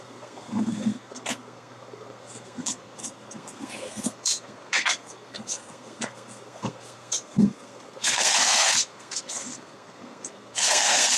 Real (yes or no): no